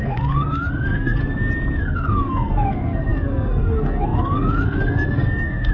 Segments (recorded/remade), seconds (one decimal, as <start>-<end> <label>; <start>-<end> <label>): 0.0-1.2 remade; 1.2-1.8 recorded; 1.8-5.7 remade